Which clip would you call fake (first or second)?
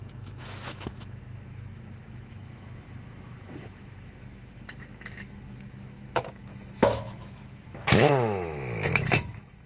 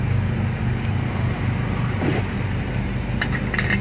first